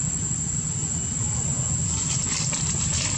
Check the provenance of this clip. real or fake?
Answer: real